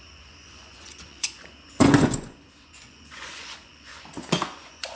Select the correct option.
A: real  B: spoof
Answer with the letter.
B